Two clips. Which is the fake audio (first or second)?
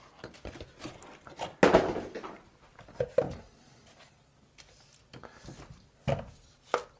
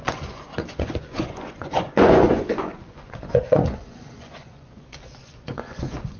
second